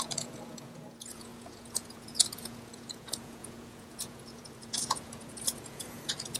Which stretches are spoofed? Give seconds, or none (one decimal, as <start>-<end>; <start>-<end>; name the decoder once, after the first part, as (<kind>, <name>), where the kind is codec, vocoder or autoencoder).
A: 0.0-6.4 (vocoder, Vocos)